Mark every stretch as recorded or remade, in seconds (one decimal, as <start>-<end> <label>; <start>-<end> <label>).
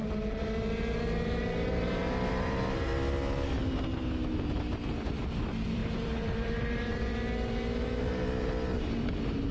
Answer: 0.0-2.9 remade; 2.9-4.3 recorded; 4.3-7.1 remade; 7.1-8.0 recorded; 8.0-9.5 remade